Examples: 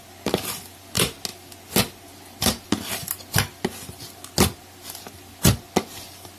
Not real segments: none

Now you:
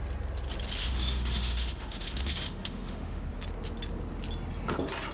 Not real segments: 0.8-3.2 (autoencoder, DAC-VAE)

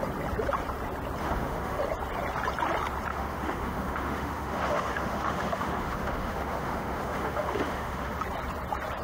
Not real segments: 1.2-1.8 (autoencoder, DAC-VAE); 3.1-8.2

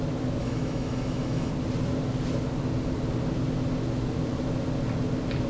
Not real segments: 0.4-1.5 (autoencoder, DAC-VAE)

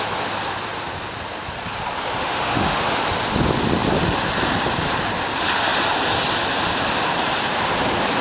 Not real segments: 2.2-2.9 (autoencoder, DAC-VAE)